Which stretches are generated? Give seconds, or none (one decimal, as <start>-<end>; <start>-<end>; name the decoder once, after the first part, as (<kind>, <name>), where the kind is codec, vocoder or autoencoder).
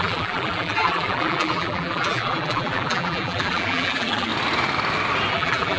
0.0-4.3 (vocoder, BigVGAN v2); 5.3-5.8